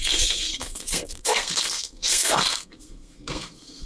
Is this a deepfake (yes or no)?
yes